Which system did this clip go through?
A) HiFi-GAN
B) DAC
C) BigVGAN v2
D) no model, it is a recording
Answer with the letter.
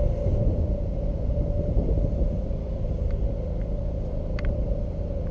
D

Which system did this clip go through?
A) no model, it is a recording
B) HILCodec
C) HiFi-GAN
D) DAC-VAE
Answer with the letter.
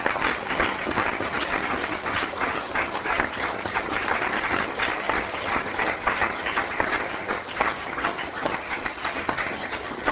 C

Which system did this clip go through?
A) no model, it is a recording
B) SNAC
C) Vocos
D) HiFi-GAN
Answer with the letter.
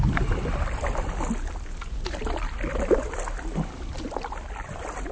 A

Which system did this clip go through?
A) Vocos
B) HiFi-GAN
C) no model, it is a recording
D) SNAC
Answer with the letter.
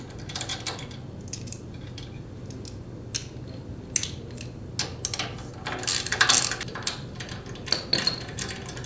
C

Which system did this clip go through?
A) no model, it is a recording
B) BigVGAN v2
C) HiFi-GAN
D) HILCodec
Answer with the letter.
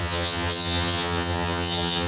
C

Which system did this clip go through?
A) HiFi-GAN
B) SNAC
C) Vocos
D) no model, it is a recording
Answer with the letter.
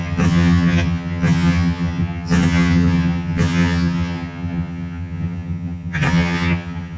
A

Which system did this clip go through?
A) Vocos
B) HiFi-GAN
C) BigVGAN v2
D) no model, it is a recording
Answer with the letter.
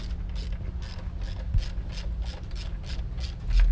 D